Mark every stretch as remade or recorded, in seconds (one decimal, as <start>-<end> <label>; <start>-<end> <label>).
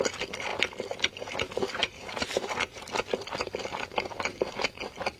0.0-1.8 recorded; 1.8-2.8 remade; 2.8-5.2 recorded